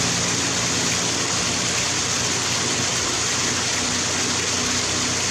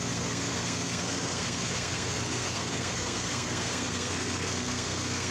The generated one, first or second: second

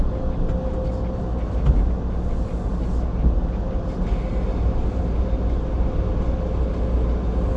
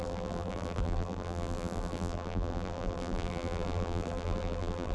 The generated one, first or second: second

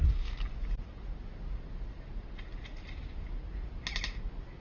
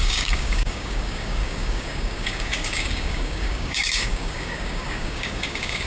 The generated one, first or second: second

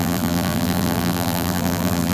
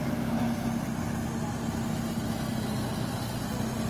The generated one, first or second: first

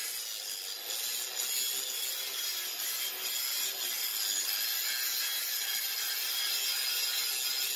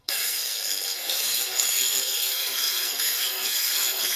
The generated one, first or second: second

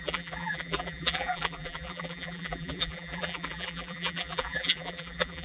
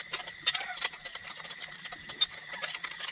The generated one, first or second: first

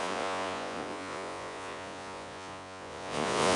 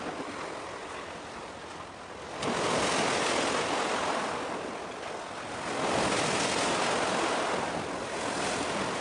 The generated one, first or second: first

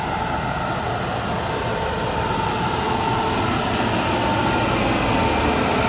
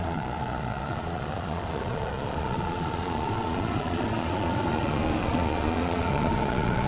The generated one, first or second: second